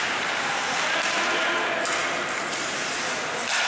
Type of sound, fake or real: real